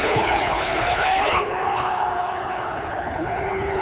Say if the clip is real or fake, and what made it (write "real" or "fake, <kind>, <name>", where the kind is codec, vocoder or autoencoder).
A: fake, codec, HILCodec